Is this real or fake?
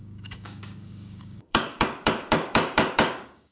fake